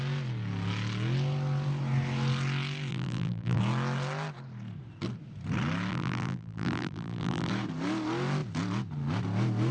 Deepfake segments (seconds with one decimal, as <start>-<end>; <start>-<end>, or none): 2.9-3.6; 5.9-7.5